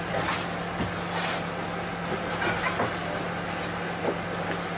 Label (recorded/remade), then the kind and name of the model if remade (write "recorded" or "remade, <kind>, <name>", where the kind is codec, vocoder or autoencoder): recorded